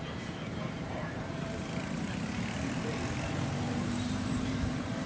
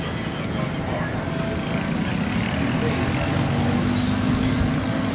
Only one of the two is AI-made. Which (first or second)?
first